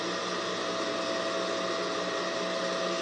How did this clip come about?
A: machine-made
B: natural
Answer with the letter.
B